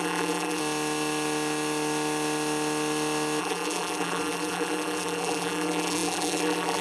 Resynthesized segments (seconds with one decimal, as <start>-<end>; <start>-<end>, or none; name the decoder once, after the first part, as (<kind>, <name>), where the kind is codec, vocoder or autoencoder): 0.0-0.6 (vocoder, BigVGAN v2); 3.4-6.8